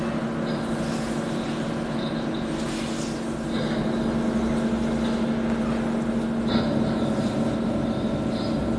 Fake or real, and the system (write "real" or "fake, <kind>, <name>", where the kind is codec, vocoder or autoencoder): real